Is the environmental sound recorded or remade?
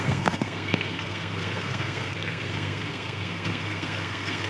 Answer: remade